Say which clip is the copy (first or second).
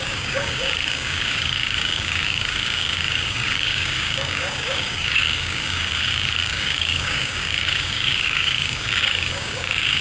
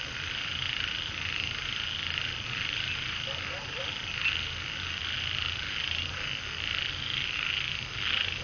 first